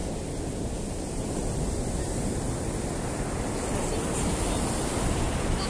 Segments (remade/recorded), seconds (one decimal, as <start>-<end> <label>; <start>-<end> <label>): 0.0-5.7 recorded